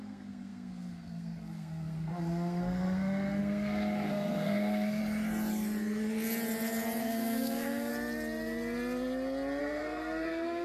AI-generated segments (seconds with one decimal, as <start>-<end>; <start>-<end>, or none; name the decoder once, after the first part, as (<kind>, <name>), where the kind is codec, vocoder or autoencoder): 0.0-5.0 (codec, SNAC); 7.0-7.9; 9.6-10.6